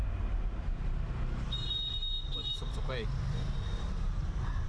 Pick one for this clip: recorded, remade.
recorded